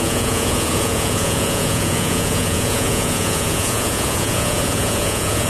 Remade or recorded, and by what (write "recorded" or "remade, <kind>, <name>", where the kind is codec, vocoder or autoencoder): remade, vocoder, Vocos